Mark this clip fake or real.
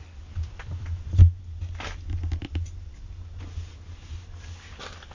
real